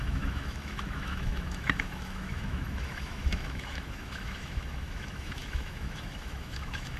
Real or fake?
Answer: fake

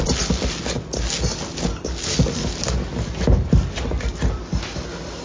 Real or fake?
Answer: real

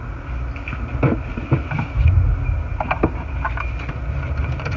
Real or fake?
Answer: real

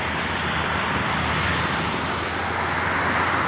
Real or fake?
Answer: real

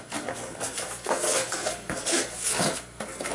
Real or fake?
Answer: fake